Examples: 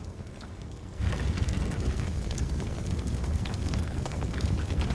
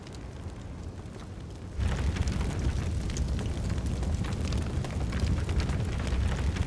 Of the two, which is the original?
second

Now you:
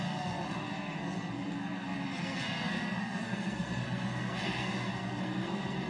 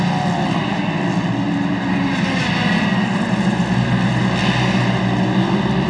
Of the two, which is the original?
second